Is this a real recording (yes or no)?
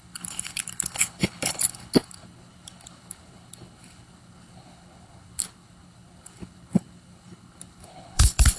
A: no